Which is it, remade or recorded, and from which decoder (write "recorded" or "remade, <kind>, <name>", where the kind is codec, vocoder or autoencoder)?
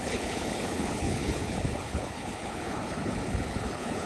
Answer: remade, codec, HILCodec